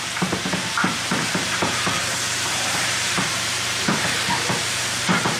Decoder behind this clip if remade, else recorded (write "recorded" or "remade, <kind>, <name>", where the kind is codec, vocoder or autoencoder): remade, vocoder, BigVGAN v2